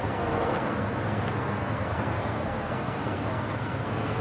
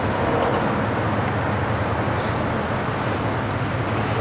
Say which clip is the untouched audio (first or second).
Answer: second